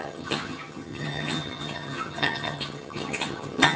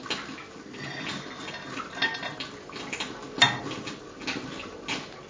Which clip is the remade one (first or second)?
first